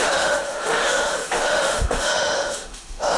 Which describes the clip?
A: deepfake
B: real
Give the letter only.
A